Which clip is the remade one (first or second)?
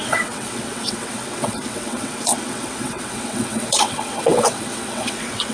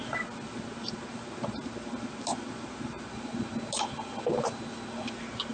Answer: first